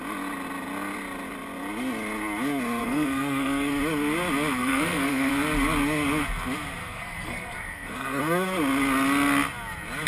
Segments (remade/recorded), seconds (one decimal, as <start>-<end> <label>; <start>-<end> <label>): 0.0-2.8 recorded; 2.8-3.7 remade; 3.7-4.6 recorded; 4.6-5.3 remade; 5.3-6.8 recorded; 6.8-8.2 remade; 8.2-10.1 recorded